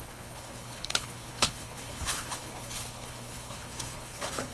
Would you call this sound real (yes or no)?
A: no